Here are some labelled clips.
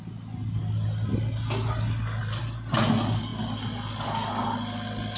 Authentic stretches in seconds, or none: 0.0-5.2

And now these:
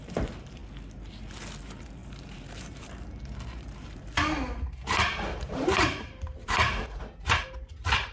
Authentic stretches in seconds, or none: 0.6-1.6

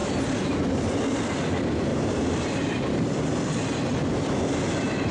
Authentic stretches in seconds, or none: 0.6-1.9; 3.1-5.1